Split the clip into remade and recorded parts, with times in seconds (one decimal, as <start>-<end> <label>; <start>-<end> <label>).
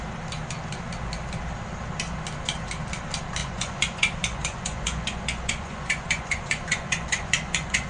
0.0-3.4 recorded; 3.4-7.9 remade